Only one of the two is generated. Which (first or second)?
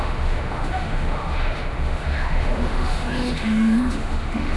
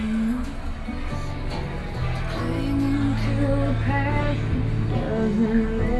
first